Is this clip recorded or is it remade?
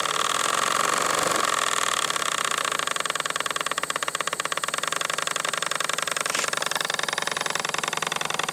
recorded